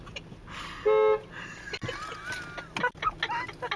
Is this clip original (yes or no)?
yes